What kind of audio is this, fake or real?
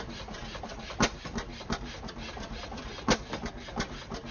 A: real